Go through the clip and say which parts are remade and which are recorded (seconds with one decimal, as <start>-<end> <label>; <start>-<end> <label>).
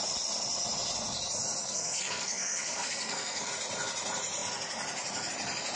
0.0-1.6 recorded; 1.6-3.5 remade; 3.5-5.8 recorded